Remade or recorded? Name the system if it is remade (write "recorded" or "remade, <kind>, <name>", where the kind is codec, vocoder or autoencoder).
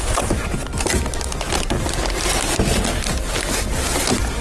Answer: recorded